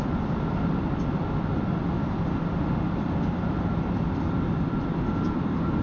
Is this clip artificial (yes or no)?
no